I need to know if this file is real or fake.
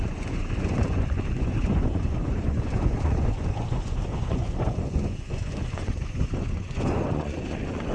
fake